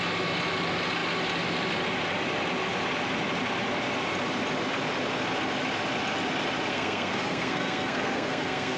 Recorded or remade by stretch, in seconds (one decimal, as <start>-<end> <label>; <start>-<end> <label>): 0.0-6.7 recorded; 6.7-8.8 remade